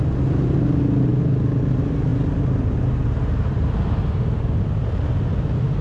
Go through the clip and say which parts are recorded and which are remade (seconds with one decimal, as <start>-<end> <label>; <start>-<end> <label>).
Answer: 0.0-5.8 recorded